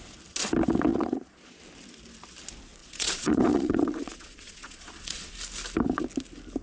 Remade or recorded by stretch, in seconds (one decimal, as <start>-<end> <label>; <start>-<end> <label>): 0.0-0.9 recorded; 0.9-1.6 remade; 1.6-2.8 recorded; 2.8-5.3 remade; 5.3-6.6 recorded